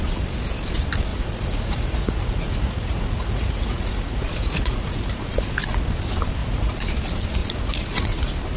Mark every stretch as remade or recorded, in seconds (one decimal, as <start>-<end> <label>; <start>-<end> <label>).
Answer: 0.0-1.1 recorded; 1.1-5.8 remade; 5.8-6.4 recorded; 6.4-6.9 remade; 6.9-7.4 recorded; 7.4-8.2 remade; 8.2-8.6 recorded